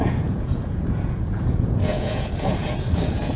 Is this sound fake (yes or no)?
yes